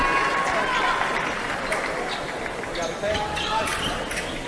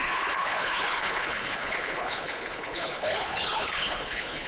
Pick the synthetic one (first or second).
second